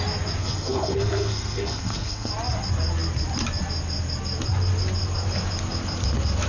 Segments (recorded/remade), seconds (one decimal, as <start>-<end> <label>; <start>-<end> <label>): 0.0-0.4 recorded; 0.4-2.3 remade; 2.3-6.5 recorded

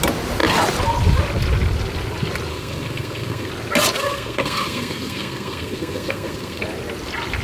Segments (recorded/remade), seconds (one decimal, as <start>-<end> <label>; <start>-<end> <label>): 0.0-2.5 recorded; 2.5-3.5 remade; 3.5-4.0 recorded; 4.0-6.6 remade; 6.6-7.4 recorded

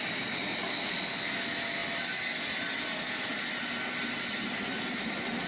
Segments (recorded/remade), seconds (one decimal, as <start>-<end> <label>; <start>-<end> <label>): 0.0-5.5 recorded